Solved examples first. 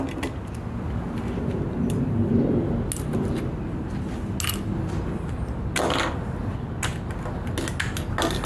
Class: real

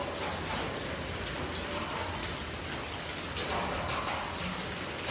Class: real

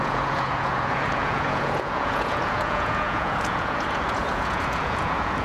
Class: fake